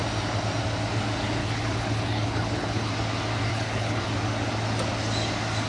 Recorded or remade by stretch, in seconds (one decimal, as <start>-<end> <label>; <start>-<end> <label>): 0.0-1.4 recorded; 1.4-2.9 remade; 2.9-3.5 recorded; 3.5-4.0 remade; 4.0-5.7 recorded